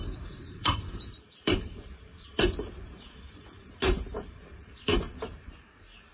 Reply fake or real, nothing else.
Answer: fake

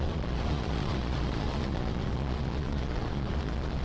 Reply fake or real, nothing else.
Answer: fake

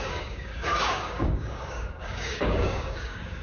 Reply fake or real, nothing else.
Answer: fake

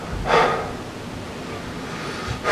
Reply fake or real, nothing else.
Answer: real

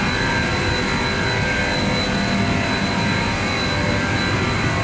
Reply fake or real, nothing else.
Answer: real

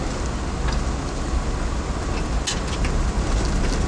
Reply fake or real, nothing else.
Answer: real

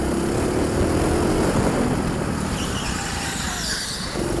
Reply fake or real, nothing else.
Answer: real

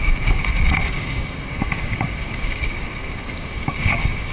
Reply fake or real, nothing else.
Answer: fake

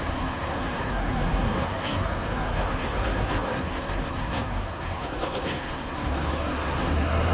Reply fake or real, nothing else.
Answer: fake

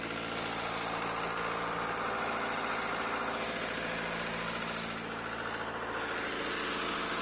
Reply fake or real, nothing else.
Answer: real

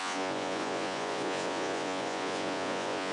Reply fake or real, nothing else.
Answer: fake